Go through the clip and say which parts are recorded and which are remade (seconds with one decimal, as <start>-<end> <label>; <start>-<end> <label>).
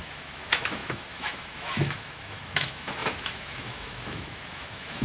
0.0-5.0 remade